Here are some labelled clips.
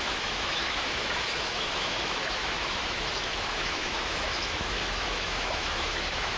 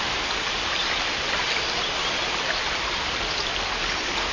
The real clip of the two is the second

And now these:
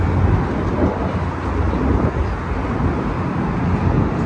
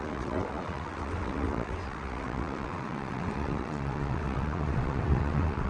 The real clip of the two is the first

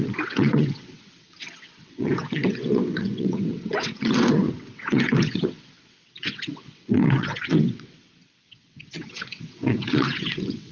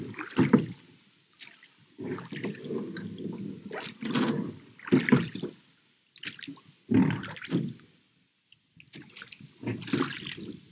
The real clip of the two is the second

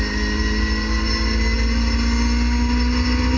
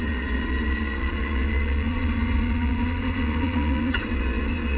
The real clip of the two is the first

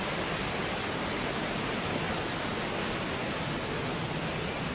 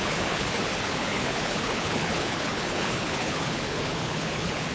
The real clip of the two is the first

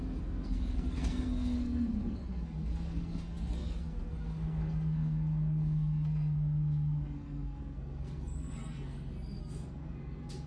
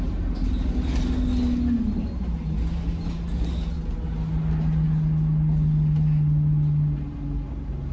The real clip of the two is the second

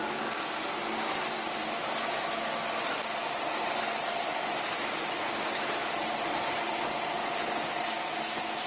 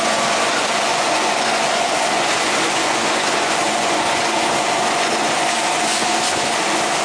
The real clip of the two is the first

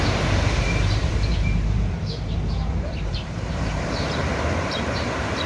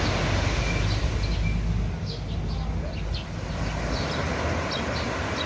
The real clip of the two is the second